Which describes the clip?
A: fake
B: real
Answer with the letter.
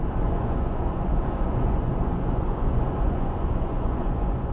A